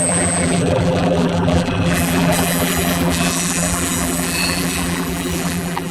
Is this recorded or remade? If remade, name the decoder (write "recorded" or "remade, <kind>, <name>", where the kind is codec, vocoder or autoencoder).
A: remade, vocoder, BigVGAN v2